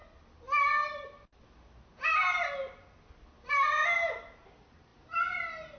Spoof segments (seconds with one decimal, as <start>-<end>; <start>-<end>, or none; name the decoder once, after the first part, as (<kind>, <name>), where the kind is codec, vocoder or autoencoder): none